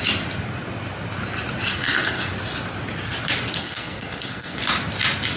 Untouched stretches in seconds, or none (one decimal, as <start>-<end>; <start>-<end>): 0.0-1.7; 2.3-3.6; 4.6-5.4